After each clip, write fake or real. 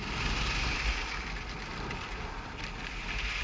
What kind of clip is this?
real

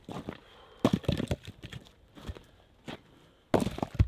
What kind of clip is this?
real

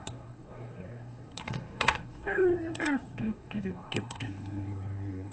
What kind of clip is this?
fake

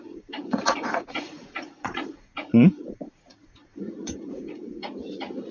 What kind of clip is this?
fake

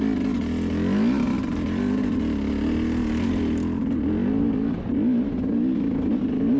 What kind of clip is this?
real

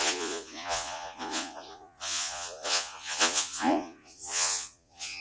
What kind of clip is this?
fake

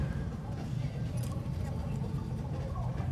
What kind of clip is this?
fake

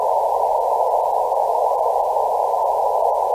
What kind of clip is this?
real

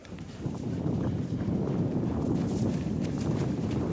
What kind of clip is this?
fake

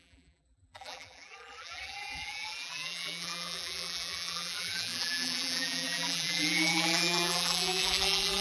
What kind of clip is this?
fake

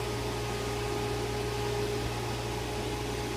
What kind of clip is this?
real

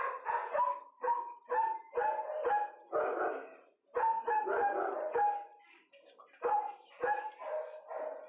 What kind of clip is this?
real